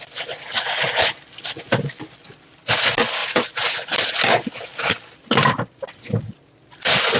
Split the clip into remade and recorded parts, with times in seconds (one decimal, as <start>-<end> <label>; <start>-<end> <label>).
0.0-3.2 recorded; 3.2-4.1 remade; 4.1-7.2 recorded